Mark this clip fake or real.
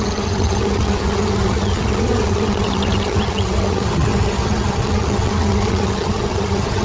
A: fake